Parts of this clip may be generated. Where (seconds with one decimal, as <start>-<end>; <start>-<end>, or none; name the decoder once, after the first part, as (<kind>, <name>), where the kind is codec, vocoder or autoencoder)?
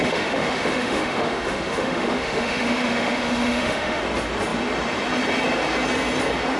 0.0-4.0 (autoencoder, DAC-VAE)